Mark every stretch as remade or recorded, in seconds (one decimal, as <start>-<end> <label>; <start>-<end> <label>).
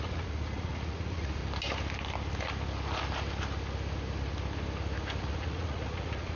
0.0-1.4 remade; 1.4-5.2 recorded; 5.2-6.4 remade